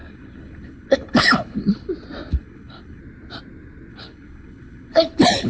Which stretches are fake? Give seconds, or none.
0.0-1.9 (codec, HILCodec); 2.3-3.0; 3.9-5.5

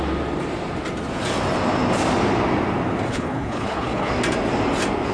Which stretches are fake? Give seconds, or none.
3.1-4.1 (codec, HILCodec)